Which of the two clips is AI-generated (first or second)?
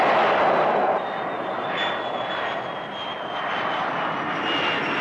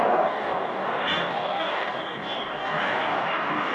second